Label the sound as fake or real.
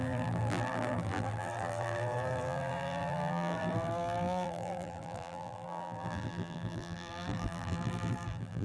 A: fake